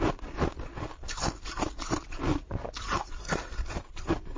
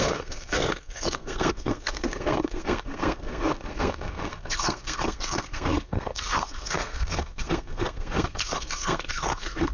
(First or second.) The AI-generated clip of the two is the second